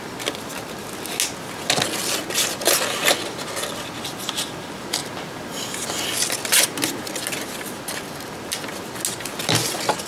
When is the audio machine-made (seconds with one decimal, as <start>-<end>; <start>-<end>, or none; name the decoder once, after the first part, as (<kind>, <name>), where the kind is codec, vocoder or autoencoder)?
none